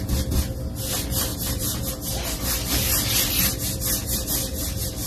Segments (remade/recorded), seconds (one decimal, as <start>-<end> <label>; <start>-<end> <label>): 0.0-1.3 recorded; 1.3-1.9 remade; 1.9-5.1 recorded